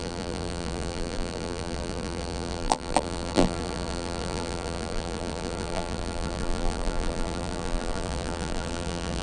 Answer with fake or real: fake